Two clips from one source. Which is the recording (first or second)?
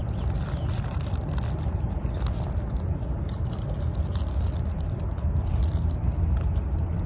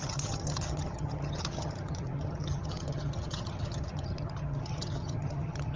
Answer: first